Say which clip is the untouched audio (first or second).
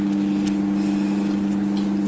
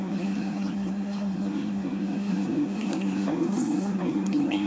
first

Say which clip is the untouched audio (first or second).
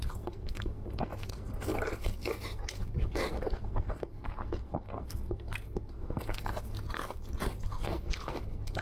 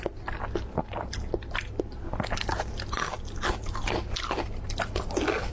second